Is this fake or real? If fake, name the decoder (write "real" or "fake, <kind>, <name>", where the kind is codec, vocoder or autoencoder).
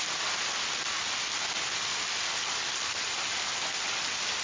real